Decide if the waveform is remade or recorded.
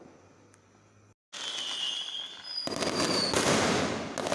recorded